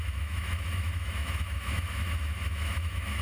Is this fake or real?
fake